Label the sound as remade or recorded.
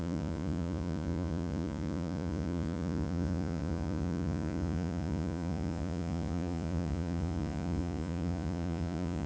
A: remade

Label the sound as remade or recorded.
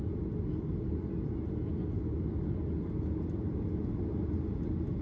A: recorded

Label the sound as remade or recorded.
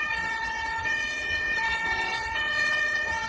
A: remade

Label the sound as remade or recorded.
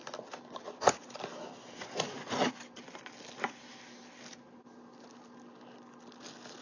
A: recorded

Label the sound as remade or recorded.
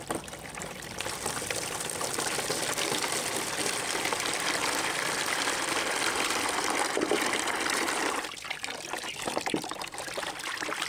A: remade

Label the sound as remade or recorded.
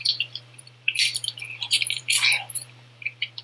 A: remade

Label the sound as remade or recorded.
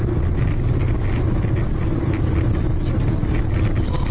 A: recorded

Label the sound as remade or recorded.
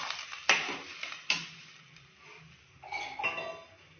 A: recorded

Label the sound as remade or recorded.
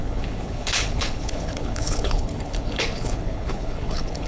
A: remade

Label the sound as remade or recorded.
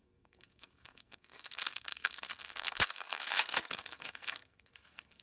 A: remade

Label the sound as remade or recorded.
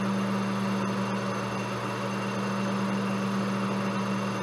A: recorded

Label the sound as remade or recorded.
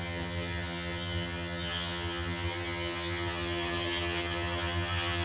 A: remade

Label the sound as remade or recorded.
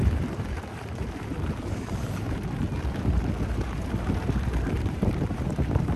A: remade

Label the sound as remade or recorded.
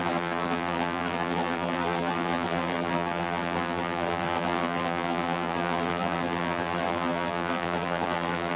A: remade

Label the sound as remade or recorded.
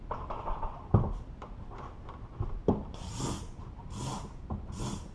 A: recorded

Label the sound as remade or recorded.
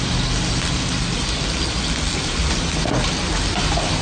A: recorded